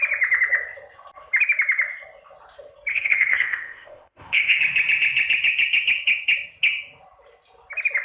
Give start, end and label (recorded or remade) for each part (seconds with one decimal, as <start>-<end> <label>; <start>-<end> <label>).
0.0-2.9 recorded; 2.9-4.6 remade; 4.6-8.0 recorded